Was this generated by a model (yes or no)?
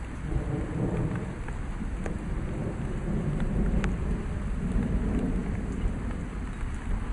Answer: no